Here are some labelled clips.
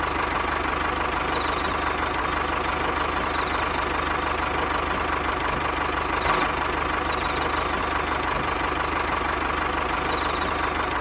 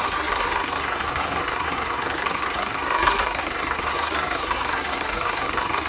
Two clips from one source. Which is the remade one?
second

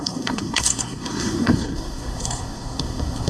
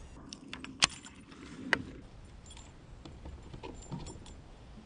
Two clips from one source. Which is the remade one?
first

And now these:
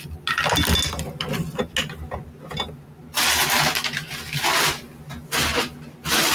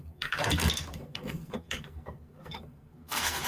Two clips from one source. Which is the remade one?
second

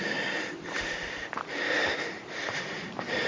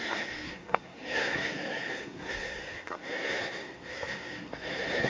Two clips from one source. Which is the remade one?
second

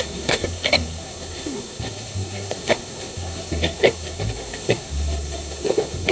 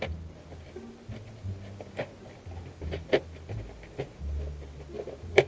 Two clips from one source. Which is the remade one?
first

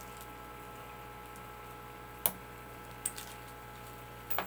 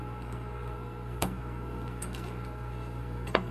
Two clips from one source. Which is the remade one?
second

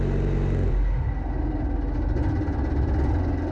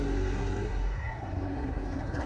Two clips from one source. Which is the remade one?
second